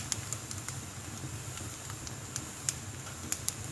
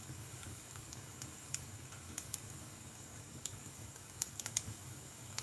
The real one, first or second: first